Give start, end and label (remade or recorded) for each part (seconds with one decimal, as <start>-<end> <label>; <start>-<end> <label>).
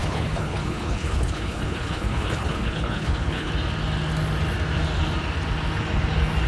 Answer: 0.0-3.5 remade; 3.5-6.5 recorded